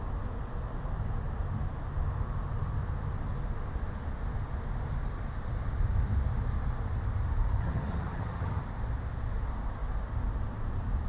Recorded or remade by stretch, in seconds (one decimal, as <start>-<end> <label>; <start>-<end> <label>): 0.0-7.6 recorded; 7.6-8.6 remade; 8.6-11.1 recorded